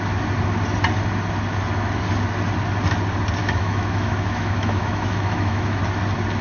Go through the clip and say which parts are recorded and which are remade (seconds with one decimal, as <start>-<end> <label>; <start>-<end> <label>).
0.0-3.4 recorded; 3.4-5.8 remade; 5.8-6.4 recorded